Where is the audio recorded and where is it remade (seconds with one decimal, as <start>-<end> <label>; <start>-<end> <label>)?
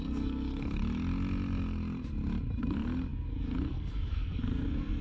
0.0-0.8 remade; 0.8-2.6 recorded; 2.6-5.0 remade